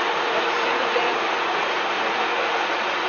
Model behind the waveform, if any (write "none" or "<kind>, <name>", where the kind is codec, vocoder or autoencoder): vocoder, Vocos